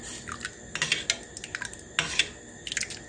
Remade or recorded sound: recorded